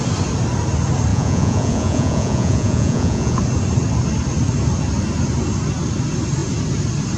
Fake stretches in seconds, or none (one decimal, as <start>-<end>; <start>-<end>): 1.1-3.4